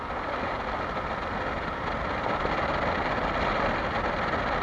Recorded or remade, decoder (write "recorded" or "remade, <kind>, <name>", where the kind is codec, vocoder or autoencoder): recorded